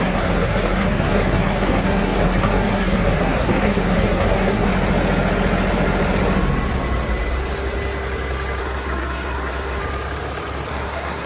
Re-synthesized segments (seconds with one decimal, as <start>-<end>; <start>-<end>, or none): 0.0-4.7; 8.6-9.8; 10.7-11.3